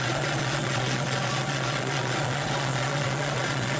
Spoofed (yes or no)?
yes